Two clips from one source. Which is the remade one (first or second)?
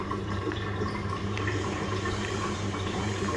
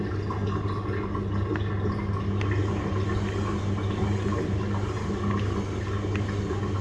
first